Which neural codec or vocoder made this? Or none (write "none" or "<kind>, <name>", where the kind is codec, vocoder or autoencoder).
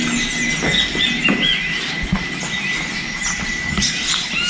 none